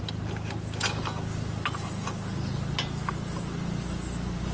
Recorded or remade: recorded